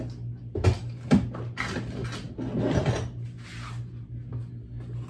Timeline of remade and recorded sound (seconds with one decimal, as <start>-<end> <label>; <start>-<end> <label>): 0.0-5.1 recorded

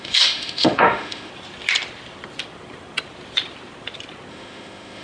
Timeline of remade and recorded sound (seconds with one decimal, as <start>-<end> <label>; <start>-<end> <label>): 0.0-1.3 remade; 1.3-4.3 recorded; 4.3-5.0 remade

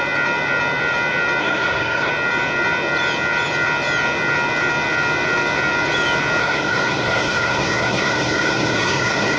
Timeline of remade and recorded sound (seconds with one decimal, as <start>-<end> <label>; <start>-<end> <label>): 0.0-1.4 recorded; 1.4-2.1 remade; 2.1-6.4 recorded; 6.4-9.4 remade

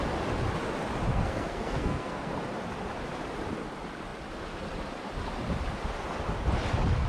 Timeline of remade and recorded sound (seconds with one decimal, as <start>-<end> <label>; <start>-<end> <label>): 0.0-1.1 recorded; 1.1-2.3 remade; 2.3-7.1 recorded

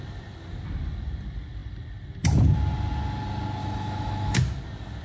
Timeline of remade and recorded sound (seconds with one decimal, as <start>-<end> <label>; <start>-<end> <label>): 0.0-3.6 recorded; 3.6-4.4 remade; 4.4-5.0 recorded